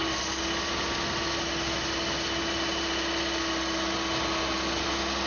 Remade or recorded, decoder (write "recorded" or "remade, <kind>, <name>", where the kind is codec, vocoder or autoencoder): recorded